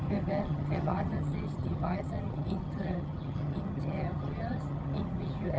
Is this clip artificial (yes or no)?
yes